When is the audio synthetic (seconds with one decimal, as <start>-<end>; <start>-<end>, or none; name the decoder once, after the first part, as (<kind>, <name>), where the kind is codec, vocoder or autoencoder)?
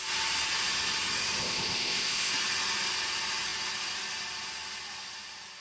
1.4-2.3 (codec, ZipCodec)